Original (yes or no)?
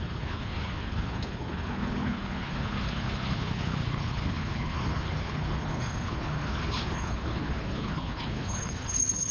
no